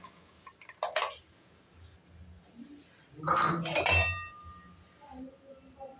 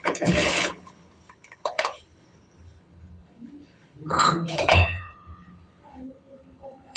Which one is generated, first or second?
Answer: second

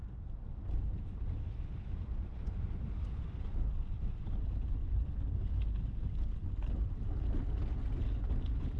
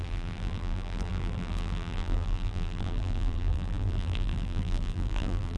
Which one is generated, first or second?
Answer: second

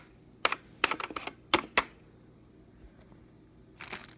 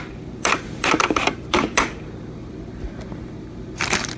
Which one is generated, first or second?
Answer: second